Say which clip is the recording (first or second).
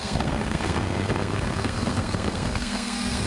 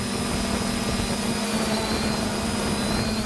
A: second